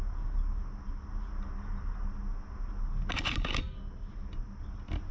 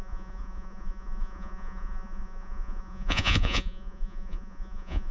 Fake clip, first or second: second